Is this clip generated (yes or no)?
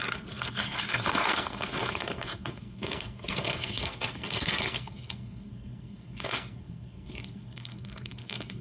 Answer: yes